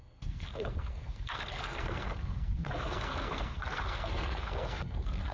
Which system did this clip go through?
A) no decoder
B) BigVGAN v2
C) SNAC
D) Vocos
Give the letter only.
C